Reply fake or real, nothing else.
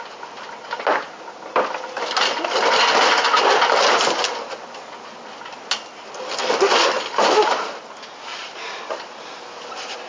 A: real